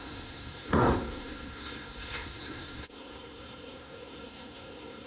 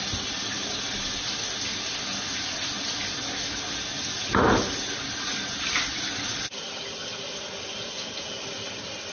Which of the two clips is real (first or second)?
second